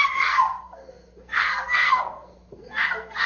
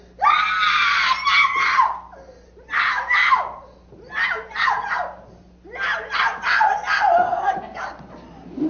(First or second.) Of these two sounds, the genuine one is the second